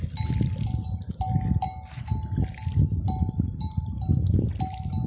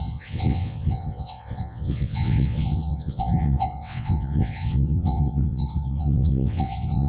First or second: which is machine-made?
second